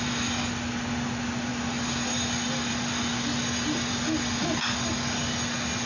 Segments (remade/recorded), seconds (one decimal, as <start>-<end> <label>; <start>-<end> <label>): 0.0-5.9 recorded

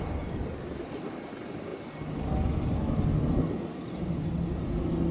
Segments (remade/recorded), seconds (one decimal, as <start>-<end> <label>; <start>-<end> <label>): 0.0-5.1 recorded

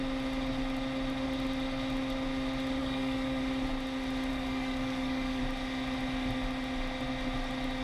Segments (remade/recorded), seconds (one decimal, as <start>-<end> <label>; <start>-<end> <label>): 0.0-2.8 recorded; 2.8-3.4 remade; 3.4-4.3 recorded; 4.3-5.4 remade; 5.4-7.8 recorded

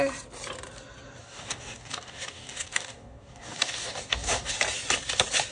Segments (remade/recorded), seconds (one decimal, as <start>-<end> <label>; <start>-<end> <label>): 0.0-1.2 recorded; 1.2-4.5 remade; 4.5-5.5 recorded

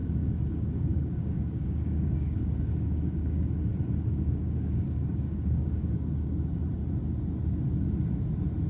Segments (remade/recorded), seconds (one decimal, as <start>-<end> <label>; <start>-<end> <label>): 0.0-3.5 remade; 3.5-4.1 recorded; 4.1-6.6 remade; 6.6-8.7 recorded